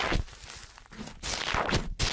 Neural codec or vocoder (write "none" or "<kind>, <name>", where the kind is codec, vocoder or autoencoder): none